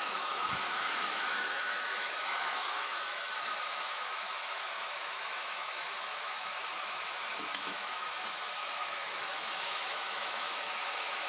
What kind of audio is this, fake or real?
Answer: fake